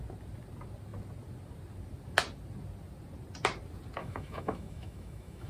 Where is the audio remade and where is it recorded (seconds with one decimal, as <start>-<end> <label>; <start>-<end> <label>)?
0.0-4.0 recorded; 4.0-5.5 remade